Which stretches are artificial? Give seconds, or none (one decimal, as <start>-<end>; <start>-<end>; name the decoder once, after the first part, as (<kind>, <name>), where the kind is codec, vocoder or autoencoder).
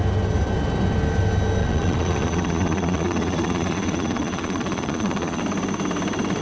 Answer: 1.6-5.4 (vocoder, Vocos)